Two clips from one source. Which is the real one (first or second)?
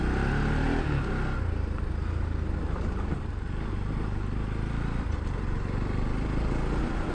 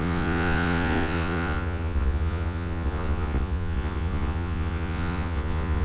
first